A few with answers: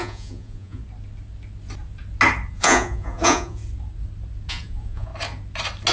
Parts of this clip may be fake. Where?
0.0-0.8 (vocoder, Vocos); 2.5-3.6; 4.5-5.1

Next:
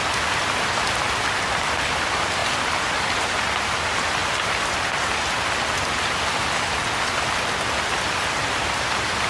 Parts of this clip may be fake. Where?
none